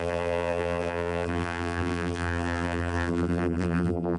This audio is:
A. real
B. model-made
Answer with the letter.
B